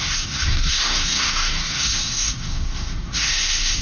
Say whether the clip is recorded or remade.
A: remade